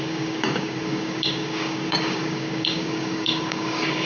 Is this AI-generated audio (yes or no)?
yes